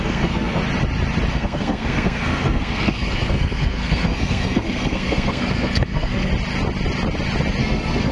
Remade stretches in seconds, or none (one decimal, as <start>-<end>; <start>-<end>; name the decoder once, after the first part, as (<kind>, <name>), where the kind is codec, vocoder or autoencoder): 0.0-0.6 (codec, SNAC); 1.3-6.3; 7.6-8.1